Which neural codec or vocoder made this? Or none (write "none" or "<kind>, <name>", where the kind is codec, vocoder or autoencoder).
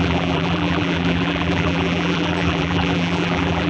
vocoder, BigVGAN v2